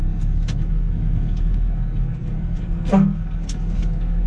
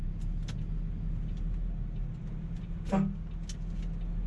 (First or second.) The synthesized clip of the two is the first